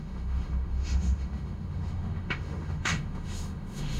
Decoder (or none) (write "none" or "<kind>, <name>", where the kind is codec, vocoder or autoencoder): autoencoder, DAC-VAE